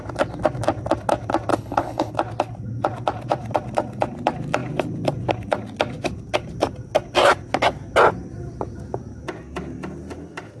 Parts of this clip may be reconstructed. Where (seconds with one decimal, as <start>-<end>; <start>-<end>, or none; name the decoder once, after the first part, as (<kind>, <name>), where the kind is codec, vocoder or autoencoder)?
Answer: 1.5-2.1 (codec, HILCodec)